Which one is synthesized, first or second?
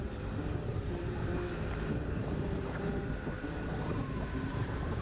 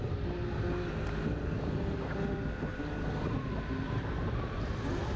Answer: first